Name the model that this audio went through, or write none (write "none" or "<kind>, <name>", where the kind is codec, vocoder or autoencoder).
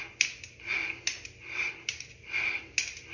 none